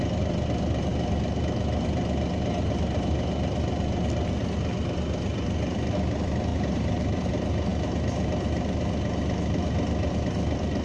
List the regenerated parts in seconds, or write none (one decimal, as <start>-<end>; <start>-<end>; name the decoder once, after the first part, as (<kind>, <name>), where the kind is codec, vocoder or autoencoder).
6.5-7.3 (vocoder, BigVGAN v2)